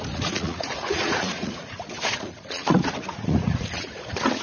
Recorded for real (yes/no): no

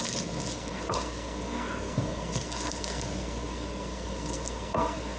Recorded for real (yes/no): no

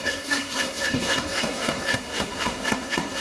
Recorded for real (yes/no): no